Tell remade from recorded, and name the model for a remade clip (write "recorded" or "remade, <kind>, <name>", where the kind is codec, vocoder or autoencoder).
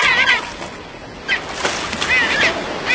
recorded